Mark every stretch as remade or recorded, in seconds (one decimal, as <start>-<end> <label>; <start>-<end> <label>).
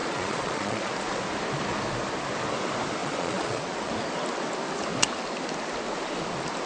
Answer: 0.0-0.9 remade; 0.9-3.0 recorded; 3.0-3.9 remade; 3.9-6.7 recorded